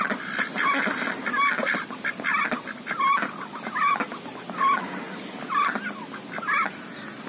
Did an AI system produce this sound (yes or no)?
no